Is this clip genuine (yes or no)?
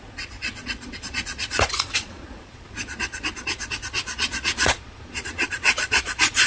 no